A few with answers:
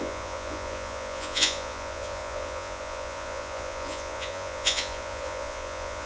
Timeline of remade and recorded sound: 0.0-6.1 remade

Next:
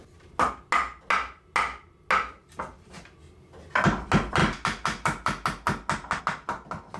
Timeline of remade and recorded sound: 0.0-7.0 recorded

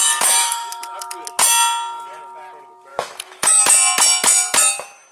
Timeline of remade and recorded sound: 0.0-0.4 recorded; 0.4-1.2 remade; 1.2-2.9 recorded; 2.9-3.6 remade; 3.6-5.1 recorded